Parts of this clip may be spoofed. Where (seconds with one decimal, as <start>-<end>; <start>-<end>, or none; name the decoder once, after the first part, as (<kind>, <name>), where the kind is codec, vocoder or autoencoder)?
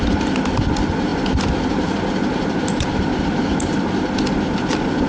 none